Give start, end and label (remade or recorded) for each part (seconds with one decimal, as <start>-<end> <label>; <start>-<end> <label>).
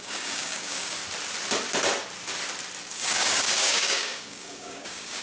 0.0-1.0 remade; 1.0-2.9 recorded; 2.9-5.2 remade